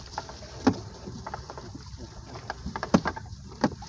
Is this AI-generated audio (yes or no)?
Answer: no